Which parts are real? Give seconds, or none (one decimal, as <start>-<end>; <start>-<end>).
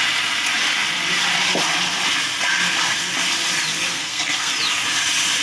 0.0-3.9; 4.5-5.4